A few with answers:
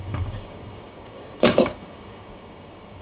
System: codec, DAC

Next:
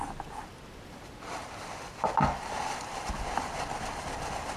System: none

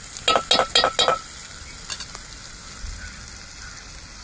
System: none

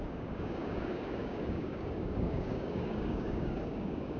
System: codec, DAC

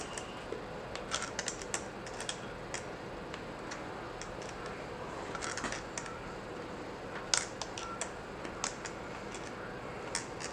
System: none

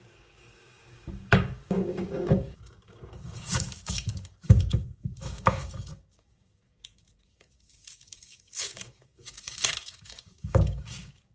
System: codec, DAC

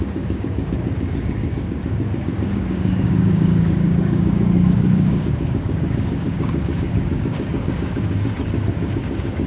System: codec, DAC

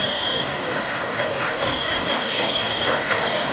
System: codec, DAC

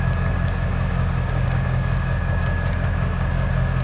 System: codec, DAC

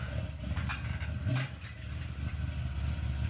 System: none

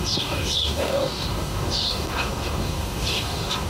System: codec, DAC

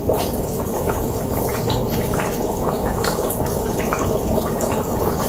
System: codec, DAC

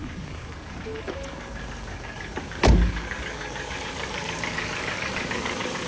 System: codec, DAC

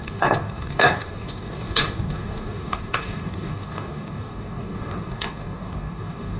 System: codec, DAC